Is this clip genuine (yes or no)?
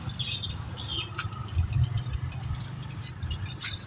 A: yes